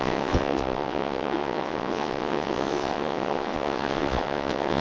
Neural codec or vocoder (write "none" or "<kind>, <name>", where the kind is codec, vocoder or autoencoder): vocoder, WaveNeXt